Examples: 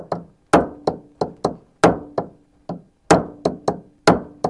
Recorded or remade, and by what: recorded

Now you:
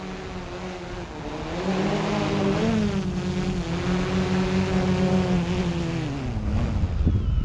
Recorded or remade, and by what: recorded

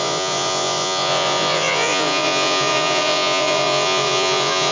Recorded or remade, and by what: remade, vocoder, Vocos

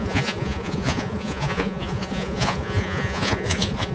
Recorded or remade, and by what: remade, vocoder, Vocos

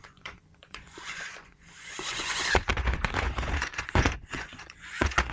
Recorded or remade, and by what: remade, vocoder, Vocos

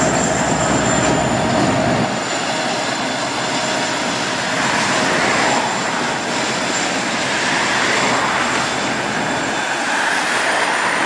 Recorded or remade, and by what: recorded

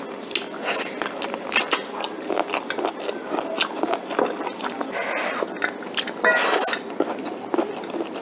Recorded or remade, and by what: recorded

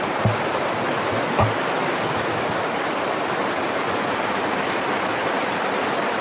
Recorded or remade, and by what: recorded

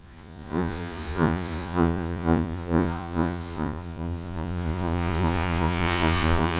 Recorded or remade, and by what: remade, vocoder, Vocos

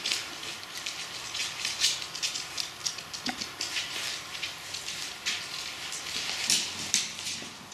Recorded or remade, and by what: recorded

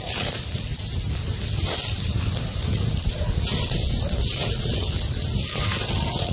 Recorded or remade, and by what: recorded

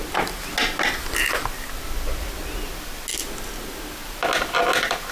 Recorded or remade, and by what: recorded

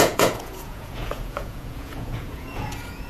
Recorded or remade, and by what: remade, vocoder, Vocos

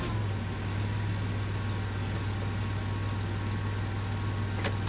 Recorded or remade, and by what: recorded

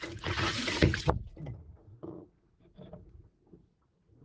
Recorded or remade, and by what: remade, vocoder, Vocos